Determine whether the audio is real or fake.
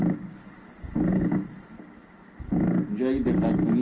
real